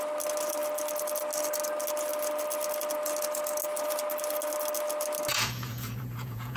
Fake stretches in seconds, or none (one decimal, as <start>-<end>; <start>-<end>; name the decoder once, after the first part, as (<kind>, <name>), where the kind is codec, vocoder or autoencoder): 5.3-6.6 (vocoder, Vocos)